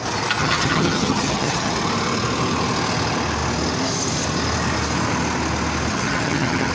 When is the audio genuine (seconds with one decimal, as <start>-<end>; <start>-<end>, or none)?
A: 0.0-0.4; 1.7-5.9